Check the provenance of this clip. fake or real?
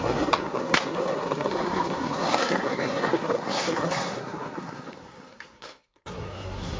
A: fake